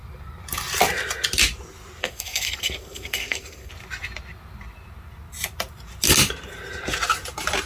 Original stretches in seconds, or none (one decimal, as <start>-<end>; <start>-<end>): 0.0-2.0; 3.7-7.7